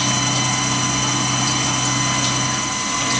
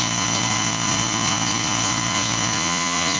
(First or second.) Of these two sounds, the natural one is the first